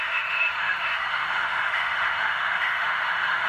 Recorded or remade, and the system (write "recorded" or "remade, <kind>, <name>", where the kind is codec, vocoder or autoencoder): remade, autoencoder, DAC-VAE